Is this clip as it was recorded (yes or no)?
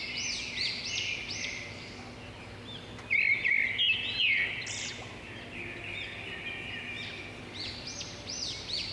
yes